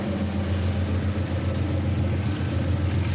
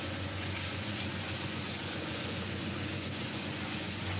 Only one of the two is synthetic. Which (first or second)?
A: second